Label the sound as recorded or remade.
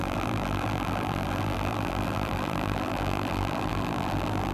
remade